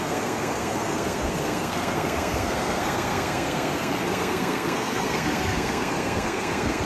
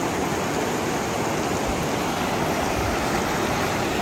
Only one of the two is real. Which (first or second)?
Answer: second